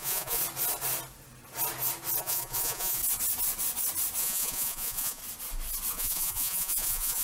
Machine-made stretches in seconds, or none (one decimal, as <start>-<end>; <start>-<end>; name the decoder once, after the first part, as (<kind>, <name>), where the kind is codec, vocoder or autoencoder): 0.0-0.4 (vocoder, Vocos); 2.2-3.0; 4.2-5.2; 5.9-7.2